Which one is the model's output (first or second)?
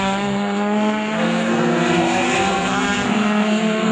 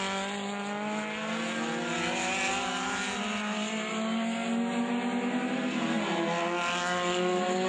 first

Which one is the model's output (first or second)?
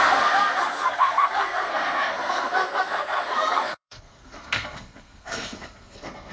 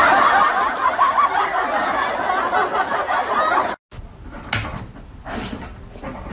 first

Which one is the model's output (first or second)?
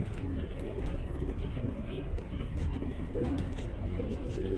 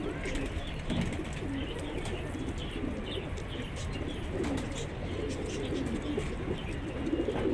first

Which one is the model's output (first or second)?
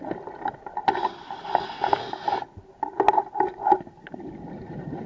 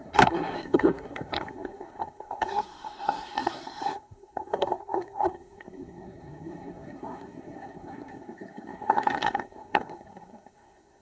second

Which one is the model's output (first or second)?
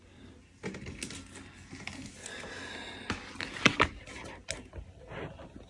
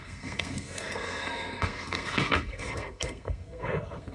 second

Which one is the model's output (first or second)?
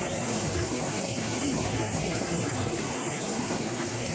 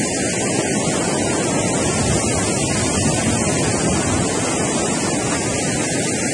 first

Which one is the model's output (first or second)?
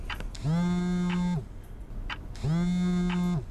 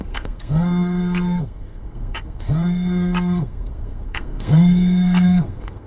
second